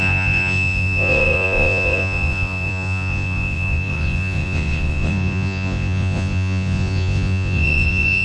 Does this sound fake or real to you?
fake